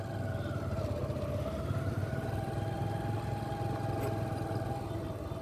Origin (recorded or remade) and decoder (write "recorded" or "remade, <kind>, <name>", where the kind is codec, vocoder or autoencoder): recorded